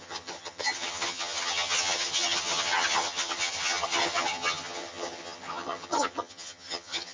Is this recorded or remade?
remade